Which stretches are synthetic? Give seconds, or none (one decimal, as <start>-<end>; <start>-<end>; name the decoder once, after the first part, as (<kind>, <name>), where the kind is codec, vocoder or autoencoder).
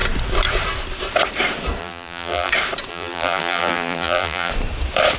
1.8-2.5 (vocoder, BigVGAN v2); 2.9-4.5